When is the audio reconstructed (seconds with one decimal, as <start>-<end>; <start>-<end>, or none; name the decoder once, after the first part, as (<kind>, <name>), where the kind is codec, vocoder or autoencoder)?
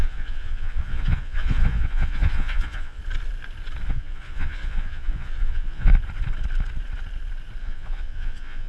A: 0.0-3.0 (vocoder, Vocos); 3.9-5.9; 7.6-8.7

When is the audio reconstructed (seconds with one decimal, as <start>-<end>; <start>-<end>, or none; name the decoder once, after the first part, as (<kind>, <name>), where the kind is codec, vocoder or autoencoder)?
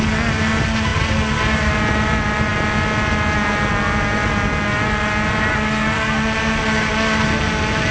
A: none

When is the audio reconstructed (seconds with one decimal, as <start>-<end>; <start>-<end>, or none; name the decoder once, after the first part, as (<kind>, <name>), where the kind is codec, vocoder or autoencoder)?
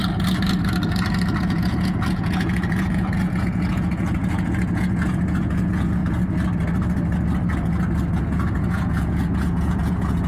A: 1.4-6.0 (vocoder, Vocos); 8.2-10.3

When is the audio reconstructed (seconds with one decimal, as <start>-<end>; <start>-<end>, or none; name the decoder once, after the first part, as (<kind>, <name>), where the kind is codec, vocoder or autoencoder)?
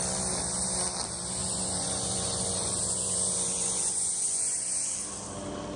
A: 1.4-4.9 (vocoder, Vocos)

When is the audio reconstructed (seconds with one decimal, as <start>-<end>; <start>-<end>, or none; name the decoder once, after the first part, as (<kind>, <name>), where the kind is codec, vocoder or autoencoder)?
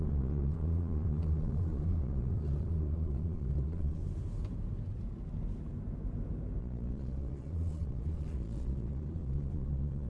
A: 0.0-4.0 (vocoder, Vocos); 6.6-10.1